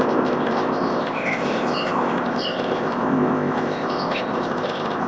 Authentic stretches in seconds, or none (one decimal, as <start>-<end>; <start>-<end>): none